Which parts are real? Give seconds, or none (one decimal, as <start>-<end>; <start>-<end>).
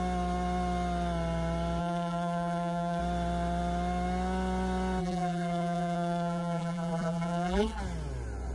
0.0-1.8; 3.0-5.0; 7.8-8.5